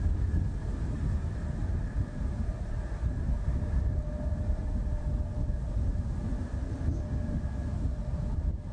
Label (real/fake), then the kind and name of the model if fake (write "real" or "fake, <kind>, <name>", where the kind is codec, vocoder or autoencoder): real